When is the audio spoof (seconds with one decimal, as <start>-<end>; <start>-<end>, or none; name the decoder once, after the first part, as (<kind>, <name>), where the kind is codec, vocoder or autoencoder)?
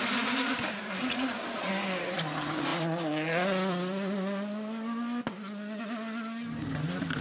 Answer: 1.0-1.7 (vocoder, Vocos)